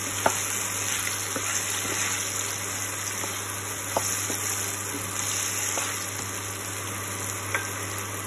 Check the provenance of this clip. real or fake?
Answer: real